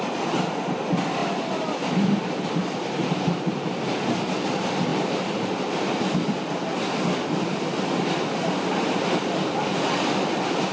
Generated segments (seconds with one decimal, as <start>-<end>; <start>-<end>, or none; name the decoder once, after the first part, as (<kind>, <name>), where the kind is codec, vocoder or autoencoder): none